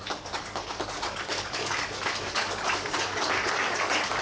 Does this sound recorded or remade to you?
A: remade